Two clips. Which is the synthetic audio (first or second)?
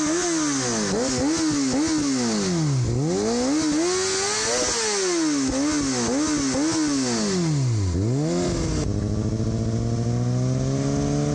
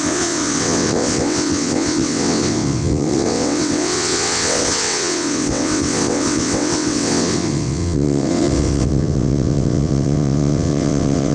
second